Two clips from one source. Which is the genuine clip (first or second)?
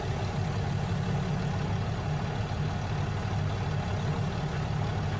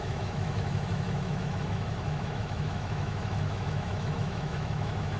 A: first